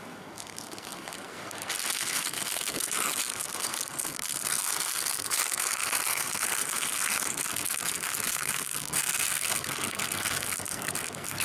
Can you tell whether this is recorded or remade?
remade